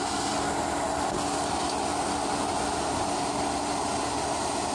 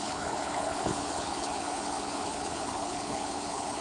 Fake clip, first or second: second